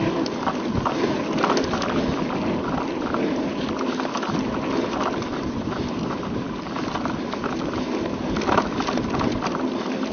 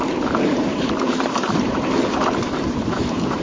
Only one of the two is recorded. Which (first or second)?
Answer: first